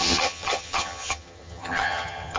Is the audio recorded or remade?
remade